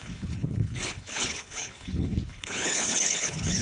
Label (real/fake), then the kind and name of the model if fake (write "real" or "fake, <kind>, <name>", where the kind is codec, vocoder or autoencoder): fake, codec, HILCodec